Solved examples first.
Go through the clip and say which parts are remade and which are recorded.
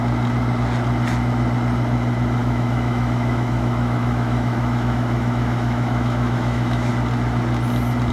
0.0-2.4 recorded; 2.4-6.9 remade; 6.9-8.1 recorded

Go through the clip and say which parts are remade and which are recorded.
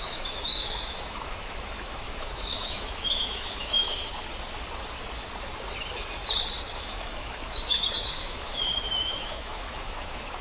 0.0-3.9 remade; 3.9-6.6 recorded; 6.6-10.4 remade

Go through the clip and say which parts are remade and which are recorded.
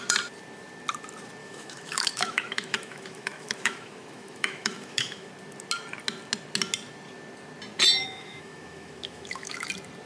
0.0-1.4 recorded; 1.4-5.3 remade; 5.3-8.0 recorded; 8.0-9.7 remade; 9.7-10.1 recorded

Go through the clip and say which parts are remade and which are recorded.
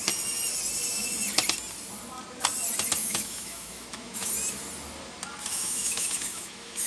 0.0-3.0 recorded; 3.0-4.3 remade; 4.3-5.5 recorded; 5.5-6.9 remade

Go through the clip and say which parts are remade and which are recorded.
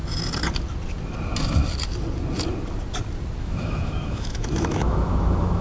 0.0-3.4 recorded; 3.4-5.6 remade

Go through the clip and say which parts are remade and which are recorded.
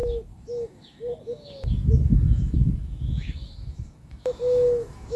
0.0-5.2 remade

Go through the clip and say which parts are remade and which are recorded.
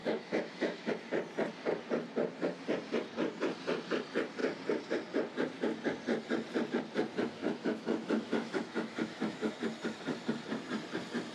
0.0-0.9 remade; 0.9-7.4 recorded; 7.4-9.5 remade; 9.5-11.3 recorded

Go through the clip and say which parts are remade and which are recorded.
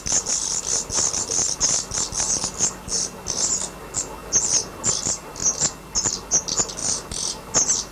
0.0-7.9 recorded